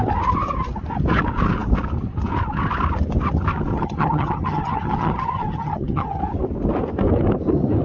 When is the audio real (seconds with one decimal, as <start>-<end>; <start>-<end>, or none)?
0.0-3.7; 6.2-7.8